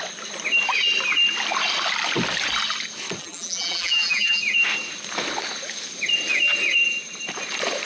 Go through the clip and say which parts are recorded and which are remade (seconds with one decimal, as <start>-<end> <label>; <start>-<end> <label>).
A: 0.0-3.2 recorded; 3.2-4.4 remade; 4.4-7.9 recorded